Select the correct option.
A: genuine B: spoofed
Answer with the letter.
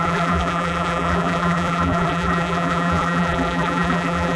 B